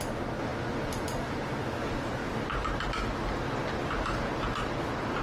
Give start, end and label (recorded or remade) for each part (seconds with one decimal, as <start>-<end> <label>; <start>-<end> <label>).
0.0-5.2 recorded